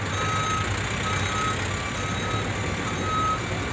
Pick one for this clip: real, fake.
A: real